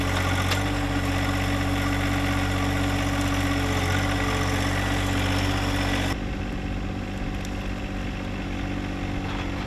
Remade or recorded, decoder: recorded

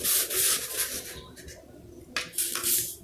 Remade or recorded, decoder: recorded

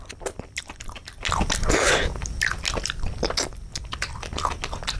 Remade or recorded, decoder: recorded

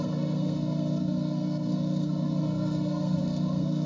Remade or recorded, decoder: remade, codec, SNAC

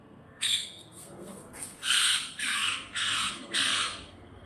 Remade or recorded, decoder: remade, codec, SNAC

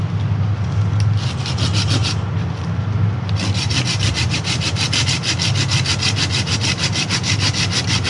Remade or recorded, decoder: recorded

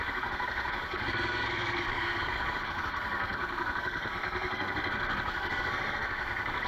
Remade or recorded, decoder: remade, codec, SNAC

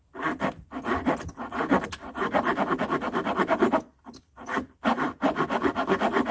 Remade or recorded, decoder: recorded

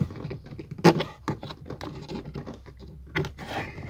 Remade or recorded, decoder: recorded